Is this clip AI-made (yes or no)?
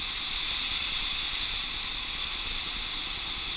no